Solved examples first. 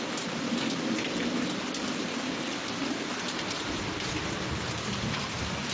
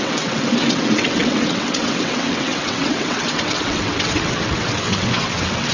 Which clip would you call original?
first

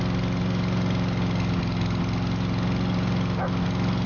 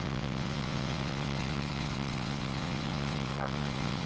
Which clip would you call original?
first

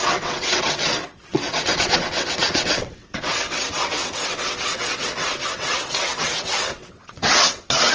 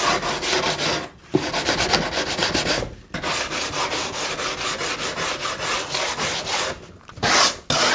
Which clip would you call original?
second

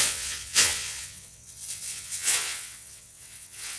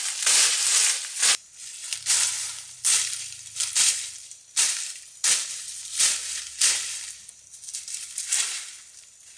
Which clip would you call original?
second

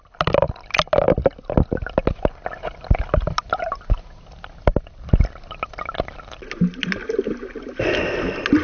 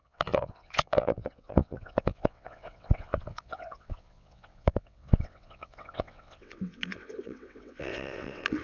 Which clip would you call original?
first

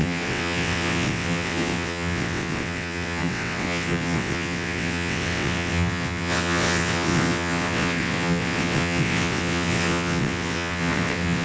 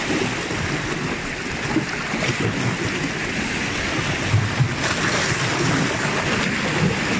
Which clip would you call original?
second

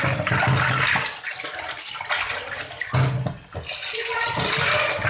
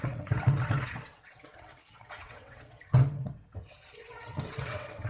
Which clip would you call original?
first